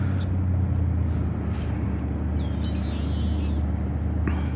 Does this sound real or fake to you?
real